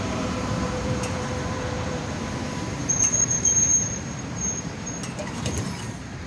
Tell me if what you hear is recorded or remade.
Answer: remade